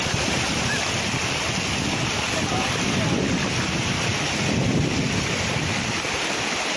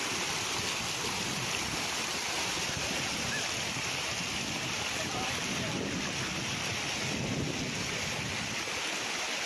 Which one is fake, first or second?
first